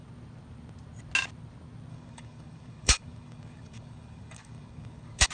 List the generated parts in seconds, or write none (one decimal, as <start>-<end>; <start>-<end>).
1.9-5.3